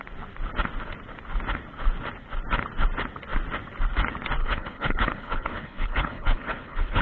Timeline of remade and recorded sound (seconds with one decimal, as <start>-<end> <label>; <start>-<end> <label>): 0.0-4.4 recorded; 4.4-7.0 remade

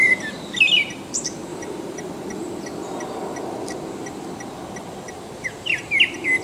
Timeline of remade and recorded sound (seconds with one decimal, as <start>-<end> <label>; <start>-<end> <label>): 0.0-1.5 recorded; 1.5-2.1 remade; 2.1-6.4 recorded

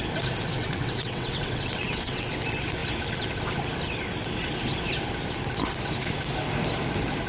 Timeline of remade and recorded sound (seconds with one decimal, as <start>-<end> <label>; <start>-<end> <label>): 0.0-0.6 recorded; 0.6-2.3 remade; 2.3-7.3 recorded